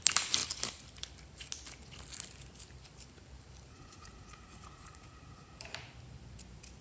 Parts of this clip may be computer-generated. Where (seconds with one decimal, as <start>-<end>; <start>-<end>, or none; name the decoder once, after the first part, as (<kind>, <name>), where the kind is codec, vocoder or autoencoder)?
3.7-5.6 (vocoder, Vocos)